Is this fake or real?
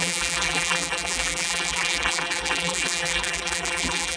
fake